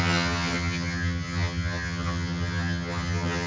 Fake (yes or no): yes